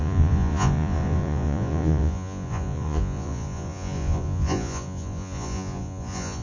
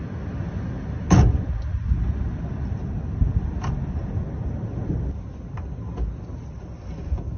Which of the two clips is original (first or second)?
second